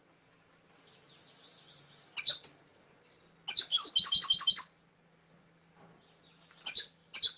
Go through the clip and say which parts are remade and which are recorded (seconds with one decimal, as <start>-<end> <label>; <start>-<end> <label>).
0.0-7.4 recorded